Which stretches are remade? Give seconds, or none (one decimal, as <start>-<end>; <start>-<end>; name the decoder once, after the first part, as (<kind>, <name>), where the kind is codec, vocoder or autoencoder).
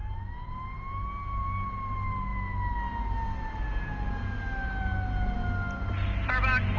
none